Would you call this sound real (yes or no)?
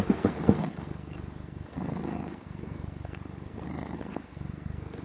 no